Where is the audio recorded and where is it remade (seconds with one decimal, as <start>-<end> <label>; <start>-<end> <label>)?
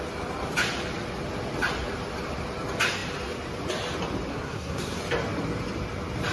0.0-4.3 recorded; 4.3-5.0 remade; 5.0-6.3 recorded